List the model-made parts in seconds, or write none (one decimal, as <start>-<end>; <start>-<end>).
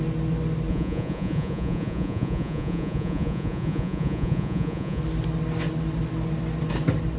0.7-5.0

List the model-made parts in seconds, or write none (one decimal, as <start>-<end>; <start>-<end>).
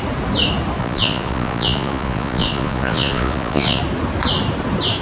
0.8-3.8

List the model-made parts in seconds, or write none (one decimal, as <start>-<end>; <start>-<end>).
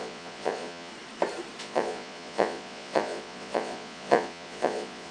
0.0-0.9; 1.6-5.1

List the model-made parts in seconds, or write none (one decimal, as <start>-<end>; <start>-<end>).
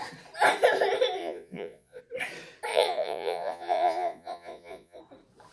1.2-2.0; 2.7-5.0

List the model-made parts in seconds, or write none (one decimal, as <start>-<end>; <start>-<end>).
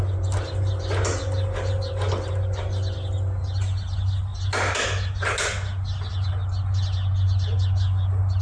none